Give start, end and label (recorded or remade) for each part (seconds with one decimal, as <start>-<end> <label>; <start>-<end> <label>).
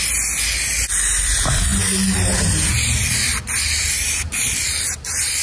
0.0-5.4 recorded